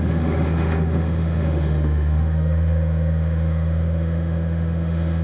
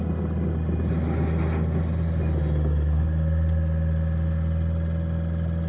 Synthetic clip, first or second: first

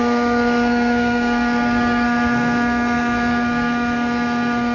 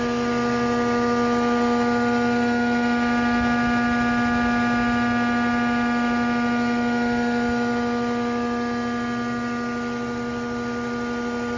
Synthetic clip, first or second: first